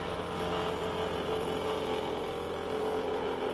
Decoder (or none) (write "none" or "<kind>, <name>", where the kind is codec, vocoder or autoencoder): none